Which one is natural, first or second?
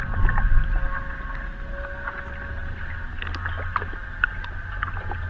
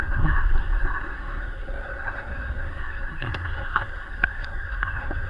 first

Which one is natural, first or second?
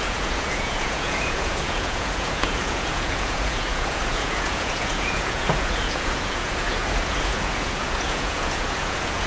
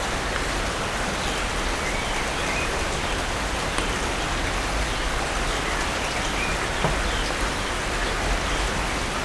second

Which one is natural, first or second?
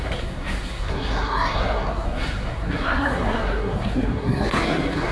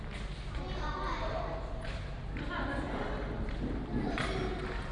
second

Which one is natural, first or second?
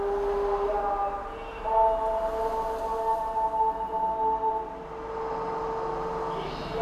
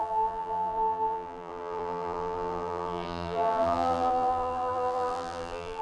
first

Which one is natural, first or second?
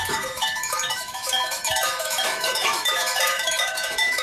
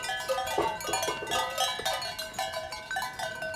second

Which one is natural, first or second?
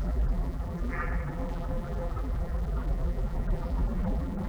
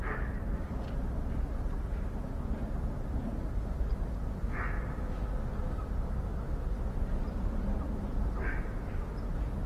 second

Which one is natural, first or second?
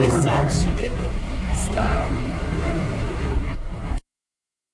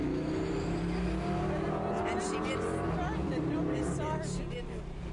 second